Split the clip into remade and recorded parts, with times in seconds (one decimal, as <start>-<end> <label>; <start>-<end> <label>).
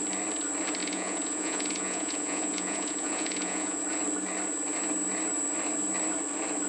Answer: 0.0-0.8 recorded; 0.8-3.8 remade; 3.8-6.7 recorded